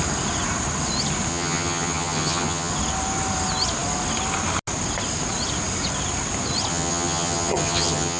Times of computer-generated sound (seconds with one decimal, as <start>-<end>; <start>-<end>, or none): 1.3-2.7; 6.7-8.2